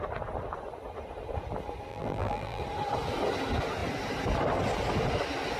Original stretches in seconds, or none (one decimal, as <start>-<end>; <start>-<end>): 0.0-1.9; 2.6-5.6